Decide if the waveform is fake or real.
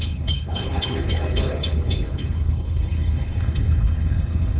fake